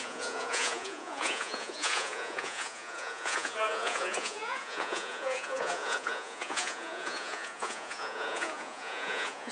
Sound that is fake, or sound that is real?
fake